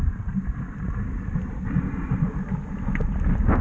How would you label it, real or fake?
real